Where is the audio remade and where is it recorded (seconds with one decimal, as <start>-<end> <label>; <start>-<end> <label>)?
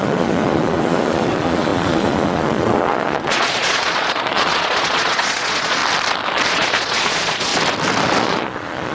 0.0-5.8 remade; 5.8-6.5 recorded; 6.5-7.5 remade; 7.5-8.2 recorded; 8.2-8.9 remade